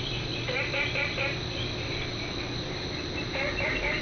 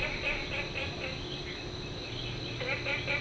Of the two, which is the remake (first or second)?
first